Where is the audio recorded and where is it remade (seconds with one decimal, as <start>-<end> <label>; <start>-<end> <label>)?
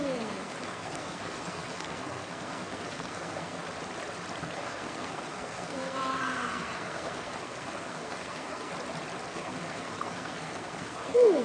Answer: 0.0-3.6 remade; 3.6-4.4 recorded; 4.4-8.7 remade; 8.7-9.3 recorded; 9.3-11.4 remade